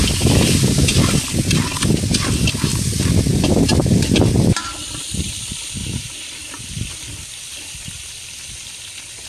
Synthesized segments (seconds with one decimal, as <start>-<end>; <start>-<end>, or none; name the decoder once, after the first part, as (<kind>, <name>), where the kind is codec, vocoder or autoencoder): 5.8-6.9 (vocoder, BigVGAN v2)